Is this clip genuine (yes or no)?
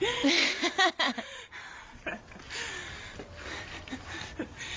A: yes